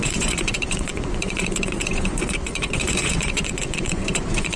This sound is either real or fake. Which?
fake